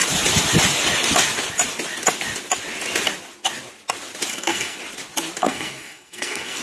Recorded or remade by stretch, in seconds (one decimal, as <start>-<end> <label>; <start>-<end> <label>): 0.0-4.3 recorded; 4.3-4.8 remade; 4.8-5.4 recorded; 5.4-6.6 remade